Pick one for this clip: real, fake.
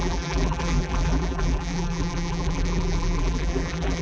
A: fake